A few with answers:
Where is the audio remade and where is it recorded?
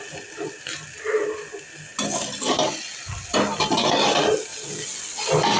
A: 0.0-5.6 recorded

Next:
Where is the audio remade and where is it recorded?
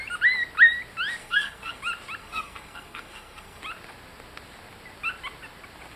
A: 0.0-1.2 recorded; 1.2-1.8 remade; 1.8-2.2 recorded; 2.2-3.6 remade; 3.6-6.0 recorded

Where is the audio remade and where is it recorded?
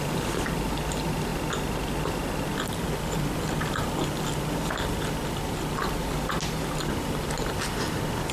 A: 0.0-8.3 recorded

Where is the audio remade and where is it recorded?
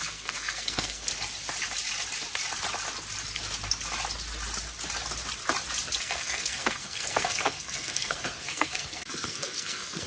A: 0.0-1.1 remade; 1.1-6.0 recorded; 6.0-10.1 remade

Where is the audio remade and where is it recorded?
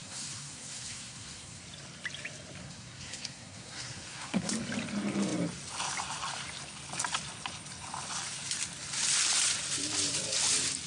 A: 0.0-1.6 remade; 1.6-2.6 recorded; 2.6-4.5 remade; 4.5-10.9 recorded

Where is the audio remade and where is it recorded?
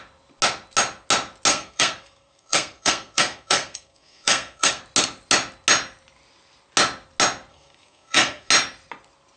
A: 0.0-1.5 recorded; 1.5-4.8 remade; 4.8-7.5 recorded; 7.5-8.5 remade; 8.5-9.4 recorded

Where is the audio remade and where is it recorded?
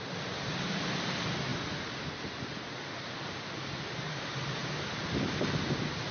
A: 0.0-6.1 recorded